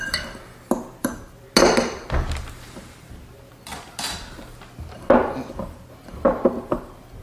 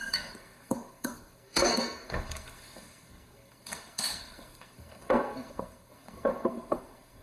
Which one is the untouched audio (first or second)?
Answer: first